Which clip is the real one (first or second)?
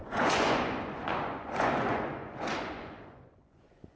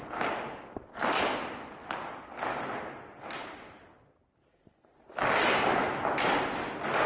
second